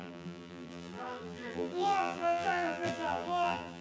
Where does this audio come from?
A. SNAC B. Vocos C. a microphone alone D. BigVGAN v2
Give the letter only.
D